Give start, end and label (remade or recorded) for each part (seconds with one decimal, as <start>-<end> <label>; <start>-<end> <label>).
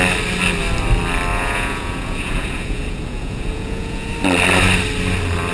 0.0-1.3 recorded; 1.3-4.1 remade; 4.1-5.5 recorded